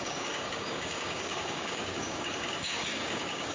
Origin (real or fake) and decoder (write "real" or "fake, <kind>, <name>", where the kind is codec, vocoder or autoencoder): fake, codec, DAC